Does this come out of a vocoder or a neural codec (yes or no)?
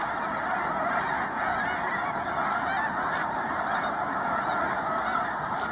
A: no